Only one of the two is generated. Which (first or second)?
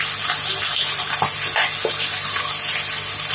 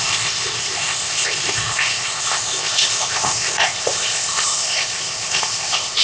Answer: second